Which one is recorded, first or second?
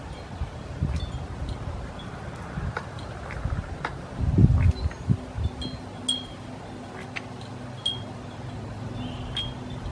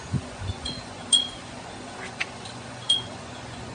first